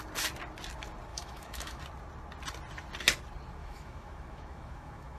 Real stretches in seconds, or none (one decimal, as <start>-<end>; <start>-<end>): 0.0-1.1; 1.8-3.6